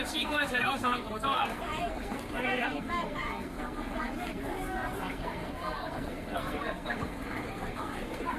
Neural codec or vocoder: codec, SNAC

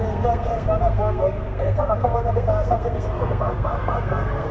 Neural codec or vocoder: codec, SNAC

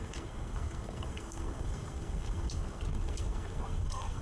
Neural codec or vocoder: codec, SNAC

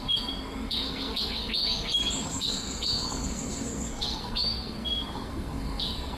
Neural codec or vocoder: codec, SNAC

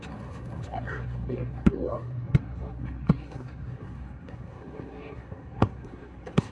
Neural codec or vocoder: codec, SNAC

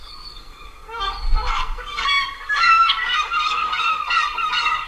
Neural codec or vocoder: codec, SNAC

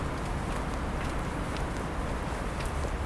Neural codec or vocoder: none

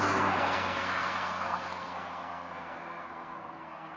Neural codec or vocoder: codec, SNAC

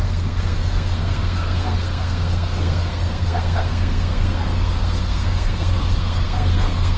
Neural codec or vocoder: codec, SNAC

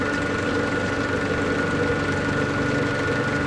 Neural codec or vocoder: none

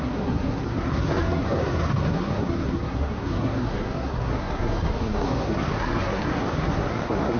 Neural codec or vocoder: codec, SNAC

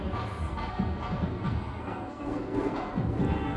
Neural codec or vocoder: codec, SNAC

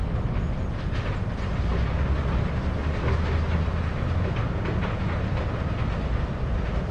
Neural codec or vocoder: none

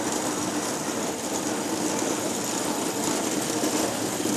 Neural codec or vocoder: none